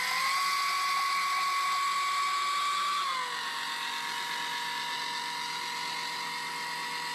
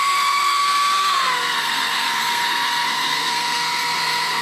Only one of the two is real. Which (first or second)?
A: first